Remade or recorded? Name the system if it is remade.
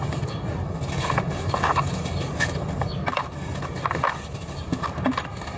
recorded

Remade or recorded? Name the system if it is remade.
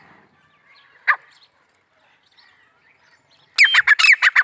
recorded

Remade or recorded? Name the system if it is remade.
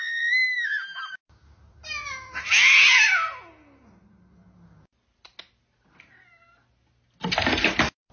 recorded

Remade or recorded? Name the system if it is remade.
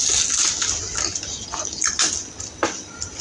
recorded